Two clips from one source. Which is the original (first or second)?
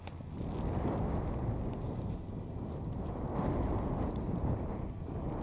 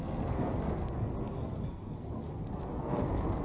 first